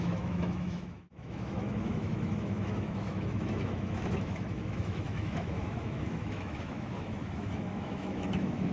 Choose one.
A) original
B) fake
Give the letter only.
B